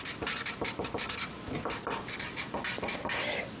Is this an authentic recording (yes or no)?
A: yes